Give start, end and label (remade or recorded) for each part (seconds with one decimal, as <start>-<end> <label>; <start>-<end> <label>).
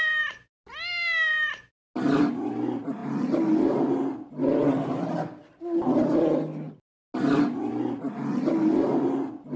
0.0-9.6 recorded